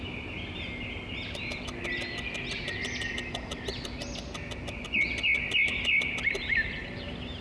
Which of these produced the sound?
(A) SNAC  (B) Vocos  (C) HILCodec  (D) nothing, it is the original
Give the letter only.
D